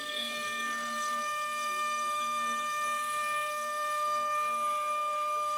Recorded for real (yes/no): no